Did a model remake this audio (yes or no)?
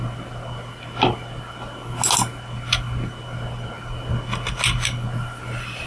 no